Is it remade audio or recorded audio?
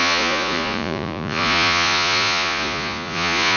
remade